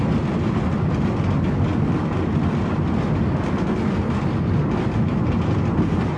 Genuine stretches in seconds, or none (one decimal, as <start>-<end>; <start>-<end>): 0.0-6.2